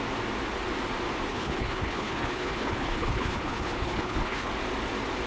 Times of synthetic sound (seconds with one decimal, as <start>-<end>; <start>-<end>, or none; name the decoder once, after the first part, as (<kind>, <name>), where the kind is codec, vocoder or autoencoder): 1.3-4.5 (codec, HILCodec)